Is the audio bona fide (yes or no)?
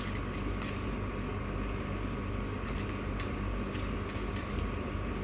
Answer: yes